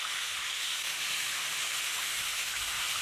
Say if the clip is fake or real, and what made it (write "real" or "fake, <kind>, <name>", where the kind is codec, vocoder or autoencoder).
fake, autoencoder, DAC-VAE